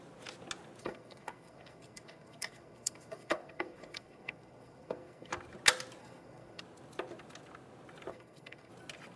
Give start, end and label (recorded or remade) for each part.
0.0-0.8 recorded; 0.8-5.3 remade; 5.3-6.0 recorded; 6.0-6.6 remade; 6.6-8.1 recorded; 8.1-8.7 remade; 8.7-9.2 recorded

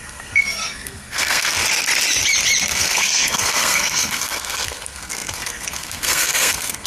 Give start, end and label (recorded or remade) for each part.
0.0-1.6 remade; 1.6-2.7 recorded; 2.7-6.9 remade

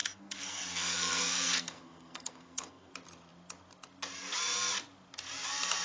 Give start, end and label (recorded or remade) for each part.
0.0-2.9 remade; 2.9-5.8 recorded

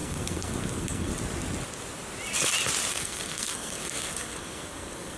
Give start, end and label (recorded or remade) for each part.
0.0-1.1 remade; 1.1-2.9 recorded; 2.9-5.2 remade